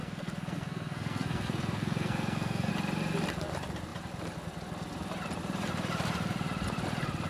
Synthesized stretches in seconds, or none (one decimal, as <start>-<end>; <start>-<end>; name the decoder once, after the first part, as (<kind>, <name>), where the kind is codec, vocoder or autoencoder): 0.0-2.7 (codec, SNAC)